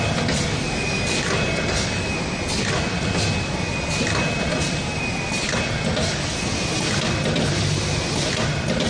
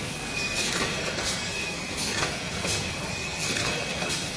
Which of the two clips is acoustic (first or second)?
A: first